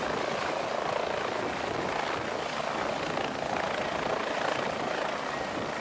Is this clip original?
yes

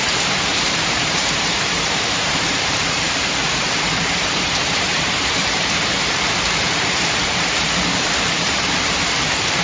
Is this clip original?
no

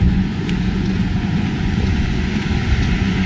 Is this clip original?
no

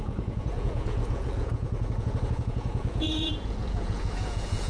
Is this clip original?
no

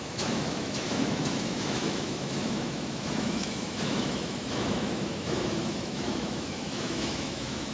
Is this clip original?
no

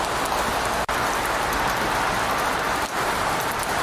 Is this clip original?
yes